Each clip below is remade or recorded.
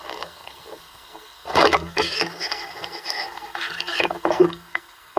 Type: remade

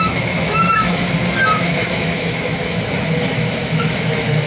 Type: remade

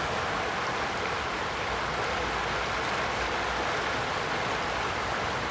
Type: recorded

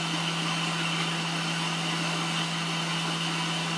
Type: recorded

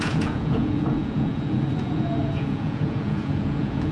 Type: remade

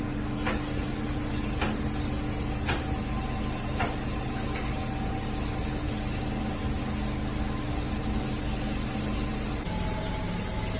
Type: recorded